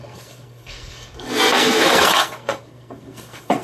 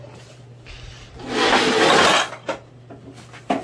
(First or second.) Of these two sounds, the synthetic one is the first